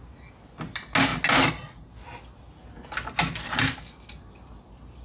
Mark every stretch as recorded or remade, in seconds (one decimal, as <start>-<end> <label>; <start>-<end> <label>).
0.0-5.0 recorded